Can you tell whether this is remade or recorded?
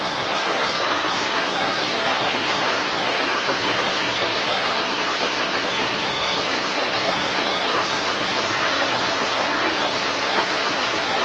remade